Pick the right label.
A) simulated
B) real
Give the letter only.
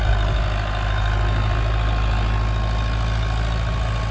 B